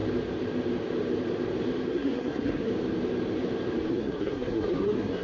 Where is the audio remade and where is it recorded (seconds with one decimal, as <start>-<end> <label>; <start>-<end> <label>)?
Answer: 0.0-1.9 recorded; 1.9-2.7 remade; 2.7-3.9 recorded; 3.9-5.2 remade